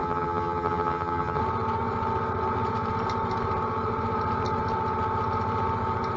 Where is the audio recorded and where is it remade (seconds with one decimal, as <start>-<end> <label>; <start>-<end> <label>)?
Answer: 0.0-1.4 remade; 1.4-6.2 recorded